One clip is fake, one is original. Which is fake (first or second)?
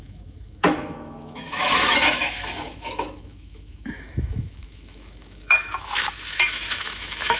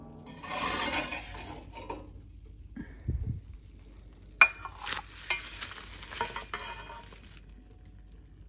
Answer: first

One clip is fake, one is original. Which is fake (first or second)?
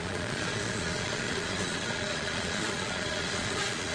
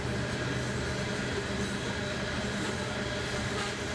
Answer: first